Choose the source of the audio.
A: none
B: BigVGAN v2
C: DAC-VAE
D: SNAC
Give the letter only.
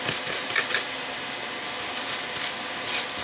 A